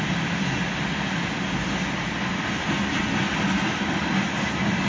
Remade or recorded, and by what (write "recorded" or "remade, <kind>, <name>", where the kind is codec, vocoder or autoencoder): recorded